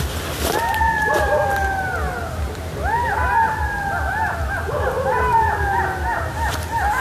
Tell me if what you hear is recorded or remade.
recorded